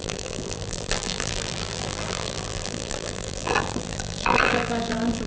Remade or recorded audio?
remade